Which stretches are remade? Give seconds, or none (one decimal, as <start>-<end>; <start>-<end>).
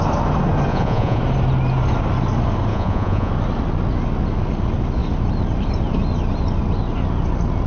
0.7-1.2; 2.7-3.3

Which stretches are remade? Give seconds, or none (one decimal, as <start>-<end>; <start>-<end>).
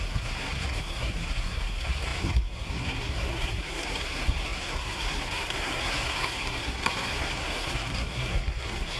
0.0-9.0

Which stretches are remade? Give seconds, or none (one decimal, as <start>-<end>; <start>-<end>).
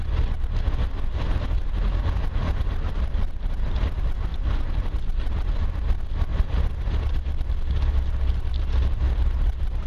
none